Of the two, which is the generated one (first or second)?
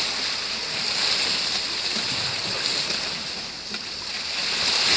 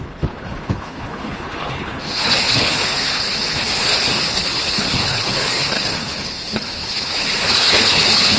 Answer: second